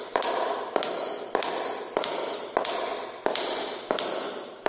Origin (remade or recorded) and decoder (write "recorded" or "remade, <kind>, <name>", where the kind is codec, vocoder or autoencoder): recorded